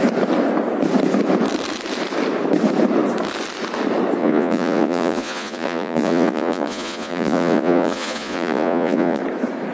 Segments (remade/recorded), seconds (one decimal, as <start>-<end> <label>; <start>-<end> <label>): 0.0-4.2 recorded; 4.2-9.2 remade; 9.2-9.7 recorded